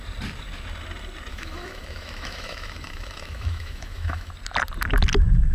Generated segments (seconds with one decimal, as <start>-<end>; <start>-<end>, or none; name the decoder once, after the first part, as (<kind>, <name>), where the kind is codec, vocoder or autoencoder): 1.3-4.3 (autoencoder, DAC-VAE)